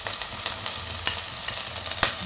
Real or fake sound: real